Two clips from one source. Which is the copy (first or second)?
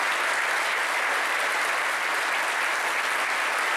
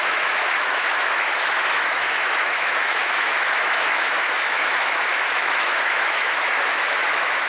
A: second